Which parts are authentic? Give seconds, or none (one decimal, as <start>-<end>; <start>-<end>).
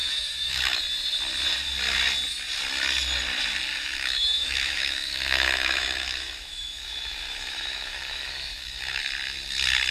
0.8-3.7; 9.0-9.9